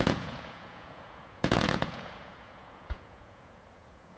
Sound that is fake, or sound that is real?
fake